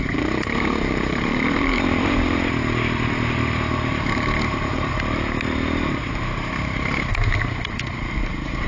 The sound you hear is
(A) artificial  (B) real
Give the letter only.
A